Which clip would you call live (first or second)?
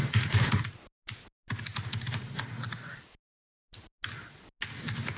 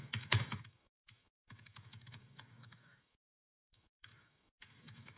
first